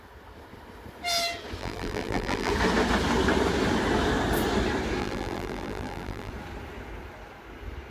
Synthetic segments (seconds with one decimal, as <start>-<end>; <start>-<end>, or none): 1.6-2.5; 5.0-6.3